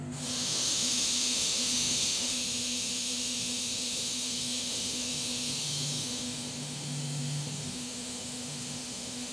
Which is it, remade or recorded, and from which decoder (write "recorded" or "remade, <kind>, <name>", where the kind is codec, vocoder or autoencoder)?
remade, autoencoder, DAC-VAE